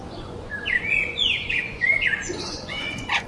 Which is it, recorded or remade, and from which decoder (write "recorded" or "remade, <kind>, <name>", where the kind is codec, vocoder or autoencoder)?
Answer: remade, vocoder, Vocos